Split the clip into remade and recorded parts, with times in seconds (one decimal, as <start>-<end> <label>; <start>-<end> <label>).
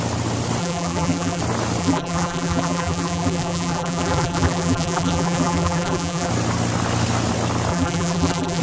0.0-0.6 recorded; 0.6-1.4 remade; 1.4-1.8 recorded; 1.8-6.3 remade; 6.3-7.7 recorded; 7.7-8.6 remade